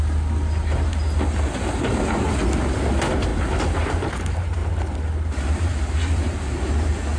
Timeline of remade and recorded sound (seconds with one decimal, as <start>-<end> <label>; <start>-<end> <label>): 0.0-7.2 recorded